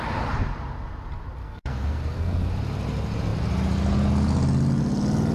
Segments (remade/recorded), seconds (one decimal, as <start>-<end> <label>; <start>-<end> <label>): 0.0-1.4 recorded; 1.4-2.5 remade; 2.5-5.3 recorded